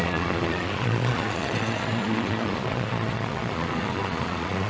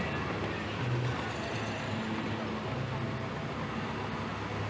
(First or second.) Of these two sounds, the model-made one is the first